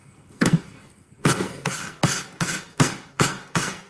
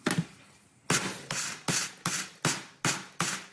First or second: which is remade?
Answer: first